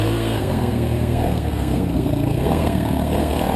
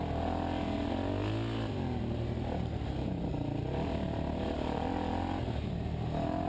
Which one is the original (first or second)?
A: second